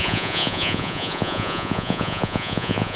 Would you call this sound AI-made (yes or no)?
yes